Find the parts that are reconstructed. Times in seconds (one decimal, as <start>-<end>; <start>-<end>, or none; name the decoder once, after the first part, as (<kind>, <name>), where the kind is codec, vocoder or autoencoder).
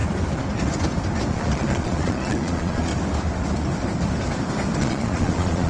1.3-2.9 (vocoder, Vocos); 4.8-5.7